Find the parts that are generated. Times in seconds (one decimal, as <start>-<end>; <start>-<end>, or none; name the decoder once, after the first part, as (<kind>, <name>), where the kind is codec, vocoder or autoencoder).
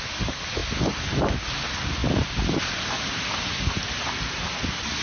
none